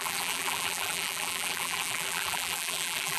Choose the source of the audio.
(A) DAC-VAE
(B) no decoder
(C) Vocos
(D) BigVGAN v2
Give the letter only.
D